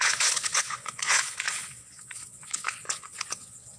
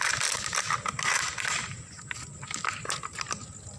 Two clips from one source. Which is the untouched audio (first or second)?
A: second